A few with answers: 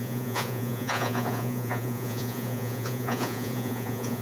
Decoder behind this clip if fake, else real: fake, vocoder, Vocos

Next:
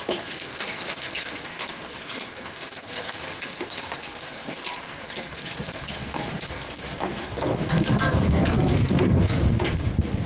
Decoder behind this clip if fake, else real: fake, codec, SNAC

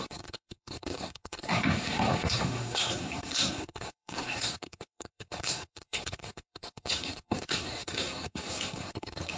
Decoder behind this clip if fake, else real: fake, codec, SNAC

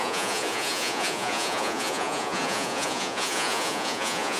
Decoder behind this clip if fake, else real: fake, vocoder, Vocos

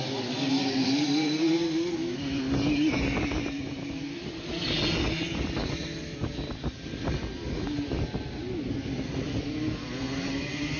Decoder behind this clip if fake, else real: real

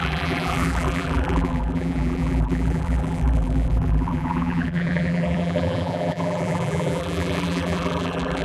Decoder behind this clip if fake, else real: fake, vocoder, BigVGAN v2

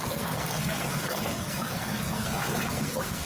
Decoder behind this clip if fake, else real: fake, codec, SNAC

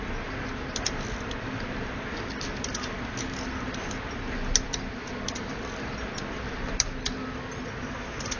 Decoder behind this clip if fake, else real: real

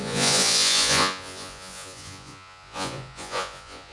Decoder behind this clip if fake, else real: fake, vocoder, Vocos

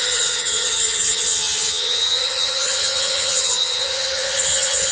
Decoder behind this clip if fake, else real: fake, vocoder, HiFi-GAN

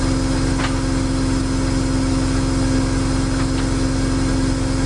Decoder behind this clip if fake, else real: real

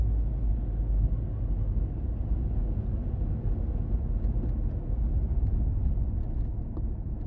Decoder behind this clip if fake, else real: real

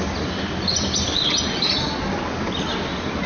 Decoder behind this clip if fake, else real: real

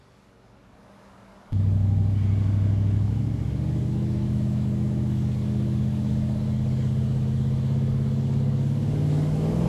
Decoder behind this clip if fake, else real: fake, codec, DAC